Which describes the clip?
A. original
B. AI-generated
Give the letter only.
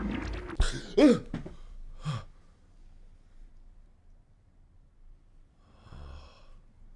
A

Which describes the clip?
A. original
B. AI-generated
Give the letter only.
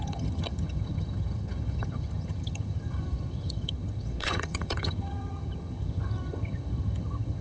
B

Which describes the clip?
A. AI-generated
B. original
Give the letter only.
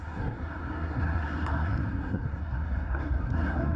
A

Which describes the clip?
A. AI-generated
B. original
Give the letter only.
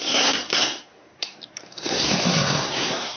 A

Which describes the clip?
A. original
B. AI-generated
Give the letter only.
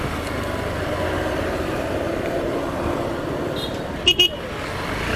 A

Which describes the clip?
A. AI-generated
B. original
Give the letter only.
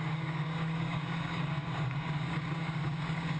A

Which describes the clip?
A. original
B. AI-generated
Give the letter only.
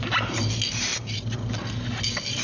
A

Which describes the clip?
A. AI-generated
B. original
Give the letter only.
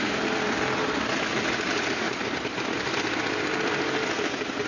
B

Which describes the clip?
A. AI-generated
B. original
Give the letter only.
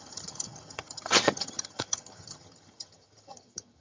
A